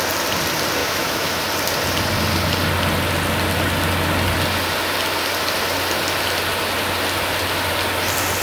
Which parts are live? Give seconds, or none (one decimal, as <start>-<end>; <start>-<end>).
0.0-0.8; 1.4-8.4